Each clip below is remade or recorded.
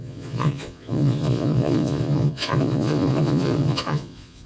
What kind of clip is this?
remade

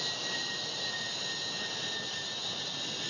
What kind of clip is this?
recorded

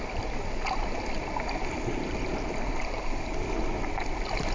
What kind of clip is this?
recorded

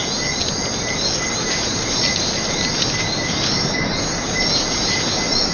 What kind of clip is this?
recorded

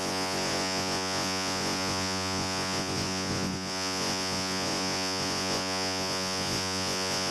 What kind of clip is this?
remade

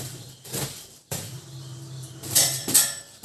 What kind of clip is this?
remade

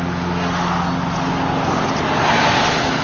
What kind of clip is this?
recorded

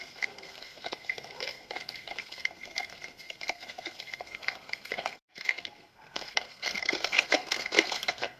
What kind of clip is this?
remade